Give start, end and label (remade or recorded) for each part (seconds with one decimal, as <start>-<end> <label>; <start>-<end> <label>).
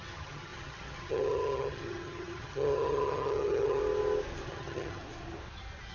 0.0-3.8 remade; 3.8-4.5 recorded; 4.5-5.0 remade; 5.0-5.9 recorded